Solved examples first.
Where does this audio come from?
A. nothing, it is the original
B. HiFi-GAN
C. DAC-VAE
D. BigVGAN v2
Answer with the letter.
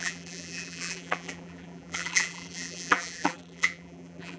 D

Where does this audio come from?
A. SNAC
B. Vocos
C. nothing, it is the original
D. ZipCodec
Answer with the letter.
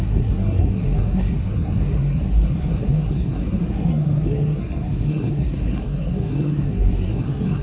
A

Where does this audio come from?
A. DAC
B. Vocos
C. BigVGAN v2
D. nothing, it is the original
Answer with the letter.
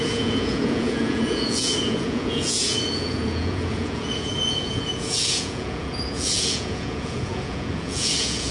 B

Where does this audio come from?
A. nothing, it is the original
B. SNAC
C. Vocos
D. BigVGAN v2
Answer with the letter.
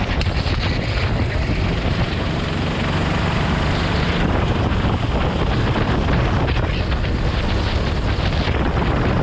A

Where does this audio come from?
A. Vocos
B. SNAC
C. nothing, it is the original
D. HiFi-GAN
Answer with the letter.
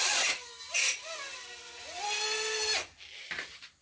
C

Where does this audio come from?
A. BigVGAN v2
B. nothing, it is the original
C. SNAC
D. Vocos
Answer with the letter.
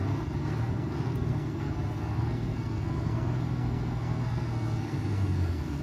C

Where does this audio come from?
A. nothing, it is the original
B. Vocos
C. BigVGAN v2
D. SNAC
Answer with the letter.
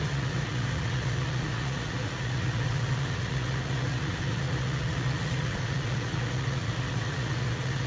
B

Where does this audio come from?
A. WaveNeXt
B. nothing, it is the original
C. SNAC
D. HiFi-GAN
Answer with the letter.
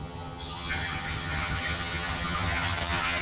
D